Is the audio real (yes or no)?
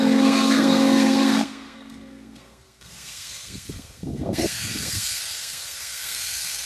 no